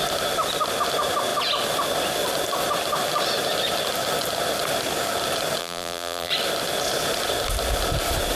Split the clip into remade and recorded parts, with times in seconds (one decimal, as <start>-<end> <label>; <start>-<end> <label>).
0.0-5.6 recorded; 5.6-6.3 remade; 6.3-8.4 recorded